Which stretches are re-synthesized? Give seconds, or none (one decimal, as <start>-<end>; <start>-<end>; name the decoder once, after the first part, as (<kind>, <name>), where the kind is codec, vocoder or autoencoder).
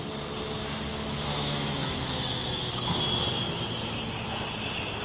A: 0.9-3.2 (autoencoder, DAC-VAE)